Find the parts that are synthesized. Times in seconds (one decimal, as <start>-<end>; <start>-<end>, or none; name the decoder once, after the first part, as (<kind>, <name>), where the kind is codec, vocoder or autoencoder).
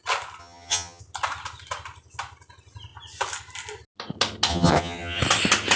0.4-1.0 (vocoder, HiFi-GAN); 4.5-5.2